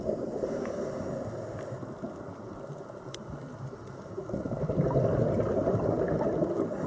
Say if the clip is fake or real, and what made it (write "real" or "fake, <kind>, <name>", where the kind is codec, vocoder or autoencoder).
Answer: real